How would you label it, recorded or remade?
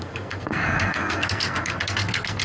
remade